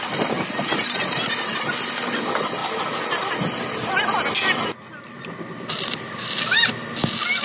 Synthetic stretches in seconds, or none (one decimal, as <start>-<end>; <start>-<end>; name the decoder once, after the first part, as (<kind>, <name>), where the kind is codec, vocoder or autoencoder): none